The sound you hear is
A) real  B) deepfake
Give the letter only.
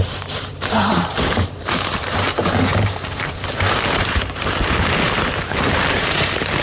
B